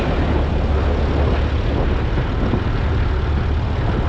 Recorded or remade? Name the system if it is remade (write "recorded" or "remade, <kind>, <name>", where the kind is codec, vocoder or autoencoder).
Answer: recorded